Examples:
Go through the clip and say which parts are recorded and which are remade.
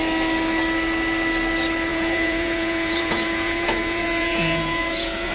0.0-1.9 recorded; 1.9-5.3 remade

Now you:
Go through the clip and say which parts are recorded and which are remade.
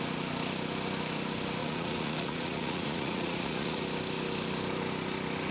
0.0-1.6 recorded; 1.6-3.8 remade; 3.8-5.5 recorded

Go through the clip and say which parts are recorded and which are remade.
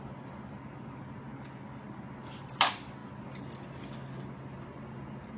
0.0-5.4 recorded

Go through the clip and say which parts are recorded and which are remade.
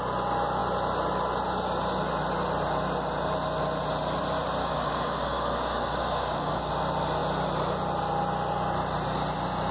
0.0-4.6 recorded; 4.6-6.7 remade; 6.7-9.7 recorded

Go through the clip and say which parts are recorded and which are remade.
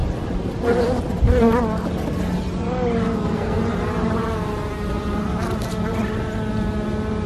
0.0-3.1 recorded; 3.1-3.6 remade; 3.6-7.3 recorded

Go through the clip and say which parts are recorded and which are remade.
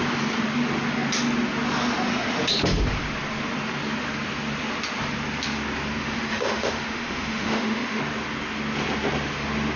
0.0-6.0 recorded; 6.0-8.0 remade; 8.0-9.8 recorded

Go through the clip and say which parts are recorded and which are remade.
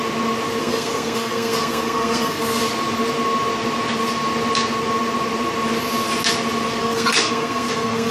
0.0-0.6 recorded; 0.6-2.6 remade; 2.6-6.8 recorded; 6.8-8.1 remade